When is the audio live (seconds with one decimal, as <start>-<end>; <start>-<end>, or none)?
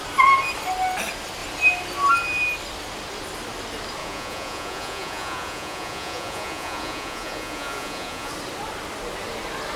0.0-4.0; 8.3-9.8